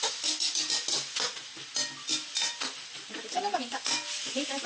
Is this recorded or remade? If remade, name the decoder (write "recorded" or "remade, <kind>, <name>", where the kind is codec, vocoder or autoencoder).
recorded